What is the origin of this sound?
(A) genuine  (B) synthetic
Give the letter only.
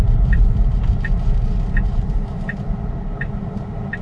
B